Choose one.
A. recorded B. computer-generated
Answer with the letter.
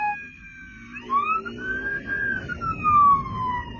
A